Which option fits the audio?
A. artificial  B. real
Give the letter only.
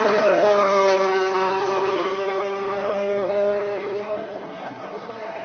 A